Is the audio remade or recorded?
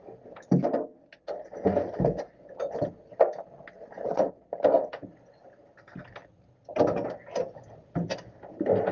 recorded